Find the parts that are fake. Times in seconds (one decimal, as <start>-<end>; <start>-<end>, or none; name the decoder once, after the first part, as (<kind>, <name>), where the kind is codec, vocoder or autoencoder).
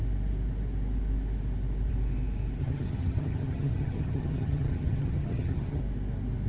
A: 2.6-5.8 (vocoder, HiFi-GAN)